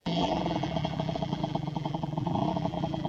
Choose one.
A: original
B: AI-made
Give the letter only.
B